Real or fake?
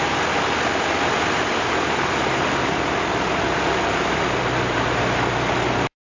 real